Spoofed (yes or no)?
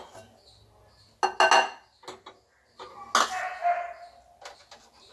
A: no